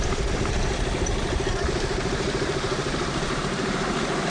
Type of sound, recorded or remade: remade